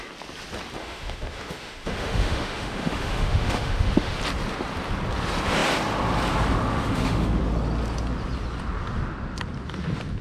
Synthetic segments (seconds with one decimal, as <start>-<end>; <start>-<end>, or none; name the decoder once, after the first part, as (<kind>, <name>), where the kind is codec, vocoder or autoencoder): 0.8-4.2 (autoencoder, DAC-VAE); 6.7-7.4